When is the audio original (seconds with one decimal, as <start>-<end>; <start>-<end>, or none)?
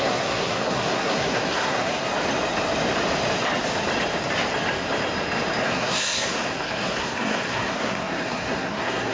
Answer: 2.1-5.6